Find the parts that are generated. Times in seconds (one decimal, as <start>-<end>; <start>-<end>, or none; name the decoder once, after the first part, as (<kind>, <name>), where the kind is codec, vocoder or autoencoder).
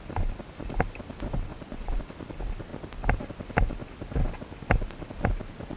1.5-2.0 (vocoder, Vocos)